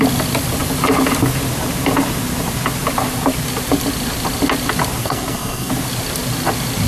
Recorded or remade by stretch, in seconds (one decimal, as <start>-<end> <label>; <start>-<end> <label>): 0.0-5.0 recorded; 5.0-5.7 remade; 5.7-6.9 recorded